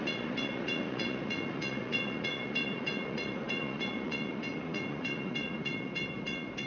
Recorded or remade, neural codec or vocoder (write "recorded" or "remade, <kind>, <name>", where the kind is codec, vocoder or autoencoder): remade, vocoder, Vocos